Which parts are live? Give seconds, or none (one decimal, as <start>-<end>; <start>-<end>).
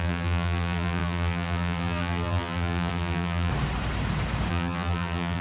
3.5-4.5